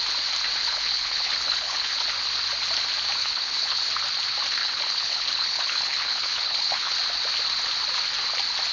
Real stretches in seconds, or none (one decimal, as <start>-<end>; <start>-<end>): 0.0-0.6; 2.1-3.2; 3.9-4.6; 6.9-8.7